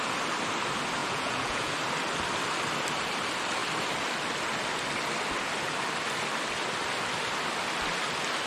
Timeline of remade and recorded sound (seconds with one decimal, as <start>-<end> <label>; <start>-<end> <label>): 0.0-1.0 recorded; 1.0-1.7 remade; 1.7-8.5 recorded

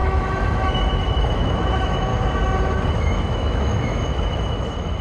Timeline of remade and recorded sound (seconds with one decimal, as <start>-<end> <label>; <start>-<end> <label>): 0.0-2.1 remade; 2.1-2.9 recorded; 2.9-5.0 remade